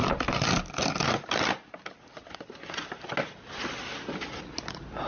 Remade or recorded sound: recorded